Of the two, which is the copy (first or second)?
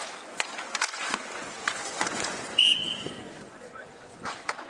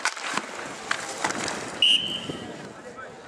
first